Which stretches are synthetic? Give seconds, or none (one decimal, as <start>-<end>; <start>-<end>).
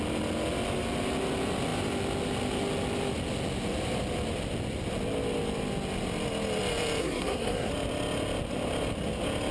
7.0-7.7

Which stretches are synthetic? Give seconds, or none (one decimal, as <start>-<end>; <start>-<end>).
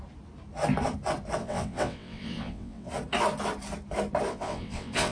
1.4-2.9; 4.3-5.1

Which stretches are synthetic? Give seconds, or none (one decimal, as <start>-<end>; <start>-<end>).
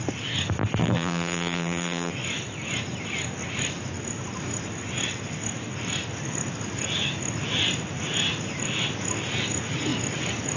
0.8-2.1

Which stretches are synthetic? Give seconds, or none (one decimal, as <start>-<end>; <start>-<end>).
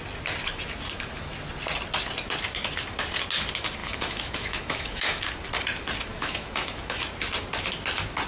3.8-5.2; 6.1-7.1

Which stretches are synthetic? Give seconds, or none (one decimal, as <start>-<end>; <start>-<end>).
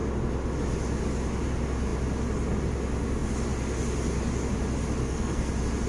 5.0-5.5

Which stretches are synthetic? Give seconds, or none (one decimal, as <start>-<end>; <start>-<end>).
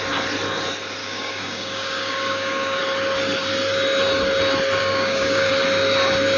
1.0-2.8; 4.8-5.5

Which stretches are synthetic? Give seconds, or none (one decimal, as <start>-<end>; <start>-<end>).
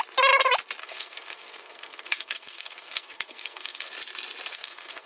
0.8-3.9; 4.5-5.1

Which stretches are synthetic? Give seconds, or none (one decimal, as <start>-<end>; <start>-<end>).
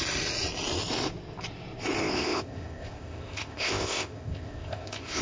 2.0-5.2